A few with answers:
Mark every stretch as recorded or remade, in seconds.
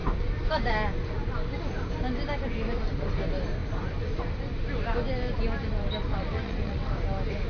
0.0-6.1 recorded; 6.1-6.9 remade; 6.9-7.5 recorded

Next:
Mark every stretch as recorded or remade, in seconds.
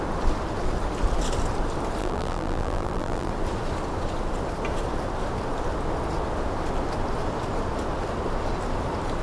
0.0-2.0 recorded; 2.0-3.3 remade; 3.3-9.2 recorded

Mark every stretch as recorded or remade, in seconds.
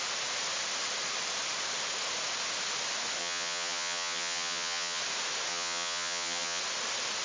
0.0-3.2 recorded; 3.2-5.0 remade; 5.0-5.5 recorded; 5.5-6.6 remade; 6.6-7.2 recorded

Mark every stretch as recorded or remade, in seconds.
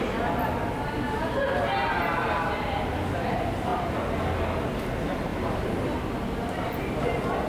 0.0-2.2 recorded; 2.2-2.8 remade; 2.8-7.5 recorded